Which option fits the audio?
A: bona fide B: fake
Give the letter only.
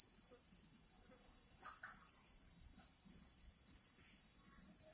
A